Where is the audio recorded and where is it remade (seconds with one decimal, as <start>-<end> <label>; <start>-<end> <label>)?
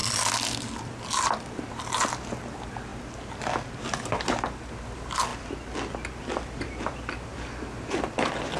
0.0-2.9 remade; 2.9-4.1 recorded; 4.1-5.3 remade; 5.3-6.2 recorded; 6.2-8.6 remade